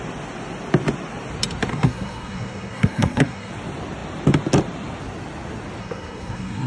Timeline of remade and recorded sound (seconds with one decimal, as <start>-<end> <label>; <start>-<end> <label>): 0.0-1.7 recorded; 1.7-3.5 remade; 3.5-5.8 recorded; 5.8-6.7 remade